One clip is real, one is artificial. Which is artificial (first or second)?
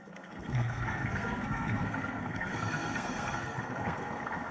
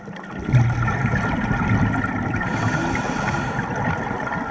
first